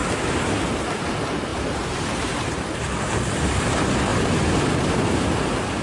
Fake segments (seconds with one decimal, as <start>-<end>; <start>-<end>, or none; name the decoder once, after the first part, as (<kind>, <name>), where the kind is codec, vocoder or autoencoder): 1.5-2.7 (vocoder, BigVGAN v2)